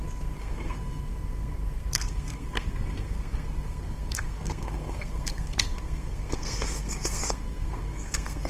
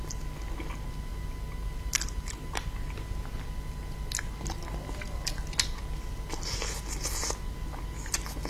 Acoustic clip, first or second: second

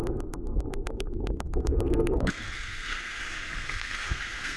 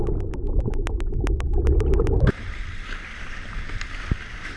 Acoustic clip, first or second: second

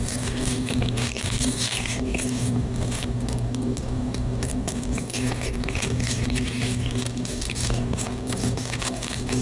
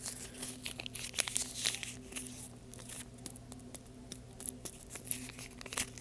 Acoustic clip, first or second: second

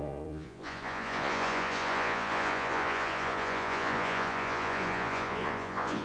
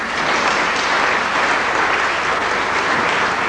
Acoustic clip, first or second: second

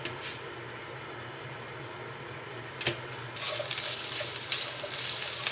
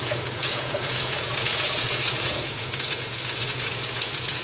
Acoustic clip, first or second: first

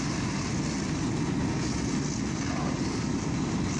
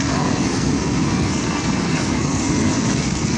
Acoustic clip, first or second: first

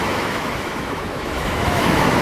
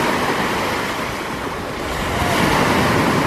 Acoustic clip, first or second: second